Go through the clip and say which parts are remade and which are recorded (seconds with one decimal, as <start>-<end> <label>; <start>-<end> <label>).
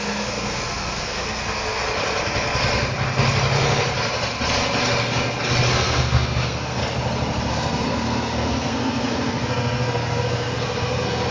0.0-1.8 remade; 1.8-5.7 recorded; 5.7-6.8 remade; 6.8-7.5 recorded; 7.5-11.3 remade